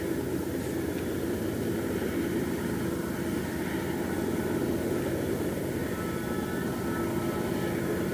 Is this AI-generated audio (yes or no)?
no